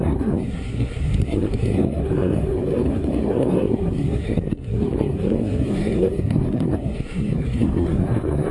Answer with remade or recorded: remade